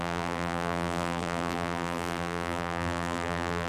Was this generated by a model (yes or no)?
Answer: yes